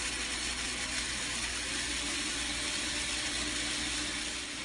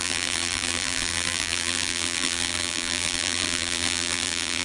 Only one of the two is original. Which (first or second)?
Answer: first